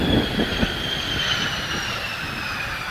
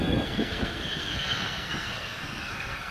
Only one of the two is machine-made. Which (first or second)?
second